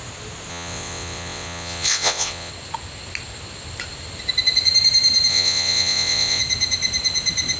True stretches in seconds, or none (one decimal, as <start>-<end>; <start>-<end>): 0.0-0.5; 2.5-5.3; 6.4-7.6